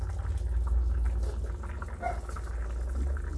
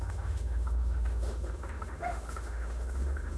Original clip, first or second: first